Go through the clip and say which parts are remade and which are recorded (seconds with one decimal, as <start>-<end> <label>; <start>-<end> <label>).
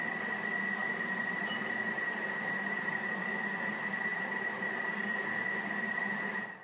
0.0-0.8 recorded; 0.8-3.2 remade; 3.2-4.1 recorded; 4.1-4.7 remade; 4.7-6.6 recorded